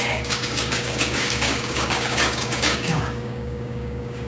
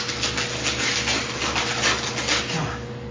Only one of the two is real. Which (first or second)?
second